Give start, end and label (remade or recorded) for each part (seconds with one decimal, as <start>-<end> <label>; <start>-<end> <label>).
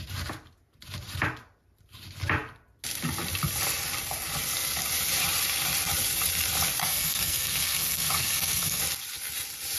0.0-6.8 recorded; 6.8-8.8 remade; 8.8-9.8 recorded